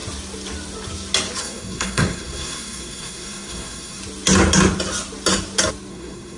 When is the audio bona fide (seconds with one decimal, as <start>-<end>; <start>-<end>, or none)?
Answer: 0.0-1.4; 4.0-5.9